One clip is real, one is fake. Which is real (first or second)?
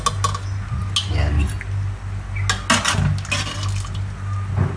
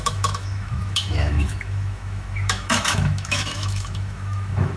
first